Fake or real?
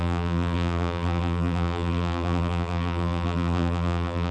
fake